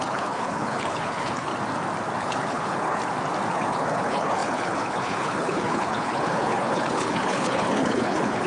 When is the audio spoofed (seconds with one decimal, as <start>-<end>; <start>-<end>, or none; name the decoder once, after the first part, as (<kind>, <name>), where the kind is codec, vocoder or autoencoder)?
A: 0.0-1.5 (codec, HILCodec); 2.2-3.0; 3.5-8.5